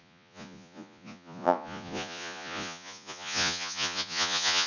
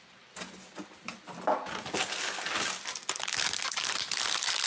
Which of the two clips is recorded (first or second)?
second